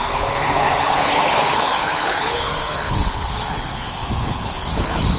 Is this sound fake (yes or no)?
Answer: yes